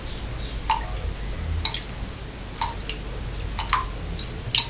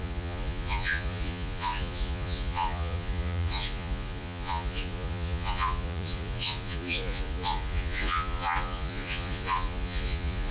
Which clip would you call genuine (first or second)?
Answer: first